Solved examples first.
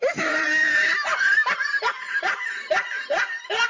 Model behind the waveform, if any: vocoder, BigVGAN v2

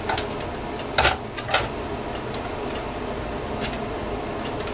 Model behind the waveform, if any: none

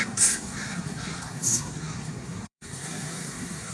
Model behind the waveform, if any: codec, SNAC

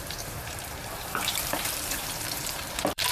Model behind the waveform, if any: vocoder, BigVGAN v2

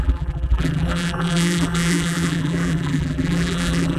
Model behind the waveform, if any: vocoder, BigVGAN v2